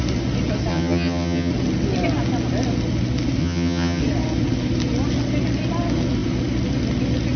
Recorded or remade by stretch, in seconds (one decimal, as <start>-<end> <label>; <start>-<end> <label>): 0.0-0.7 recorded; 0.7-1.5 remade; 1.5-3.4 recorded; 3.4-4.0 remade; 4.0-7.4 recorded